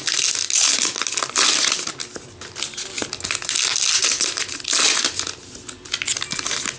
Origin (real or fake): real